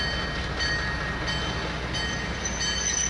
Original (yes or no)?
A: yes